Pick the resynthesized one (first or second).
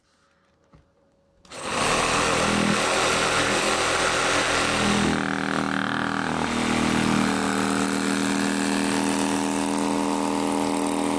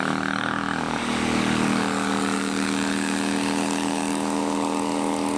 second